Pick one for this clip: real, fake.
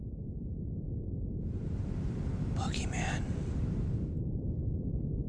real